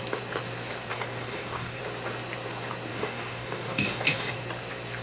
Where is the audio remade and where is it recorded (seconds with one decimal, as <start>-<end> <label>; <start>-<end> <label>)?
0.0-0.9 recorded; 0.9-1.8 remade; 1.8-2.9 recorded; 2.9-4.3 remade; 4.3-5.0 recorded